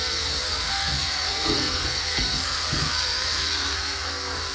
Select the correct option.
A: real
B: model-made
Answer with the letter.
B